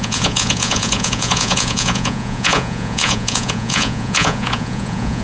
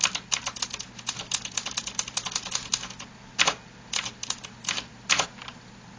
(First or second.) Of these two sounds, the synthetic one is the first